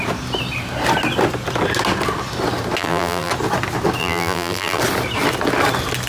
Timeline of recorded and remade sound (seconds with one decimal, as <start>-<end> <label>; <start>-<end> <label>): 0.0-2.8 recorded; 2.8-3.3 remade; 3.3-4.0 recorded; 4.0-4.8 remade; 4.8-6.1 recorded